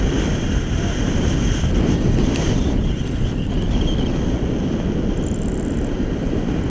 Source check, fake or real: real